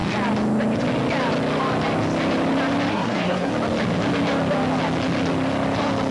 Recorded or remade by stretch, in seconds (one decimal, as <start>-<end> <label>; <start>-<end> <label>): 0.0-2.9 recorded; 2.9-3.5 remade; 3.5-6.1 recorded